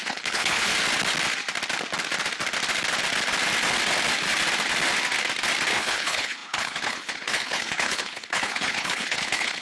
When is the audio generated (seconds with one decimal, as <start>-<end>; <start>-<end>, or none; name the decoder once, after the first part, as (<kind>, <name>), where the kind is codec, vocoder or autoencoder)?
0.0-0.7 (codec, HILCodec); 5.7-9.6

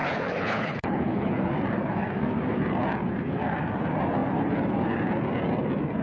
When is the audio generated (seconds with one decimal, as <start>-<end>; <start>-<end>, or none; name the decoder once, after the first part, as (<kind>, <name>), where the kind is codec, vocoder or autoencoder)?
0.0-1.3 (codec, HILCodec)

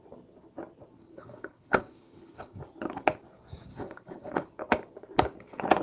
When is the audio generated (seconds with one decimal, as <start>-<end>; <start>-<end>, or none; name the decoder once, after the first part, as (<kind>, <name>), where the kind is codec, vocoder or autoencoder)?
1.0-2.6 (codec, HILCodec); 3.7-4.5